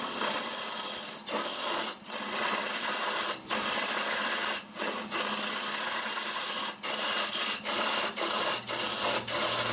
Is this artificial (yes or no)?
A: no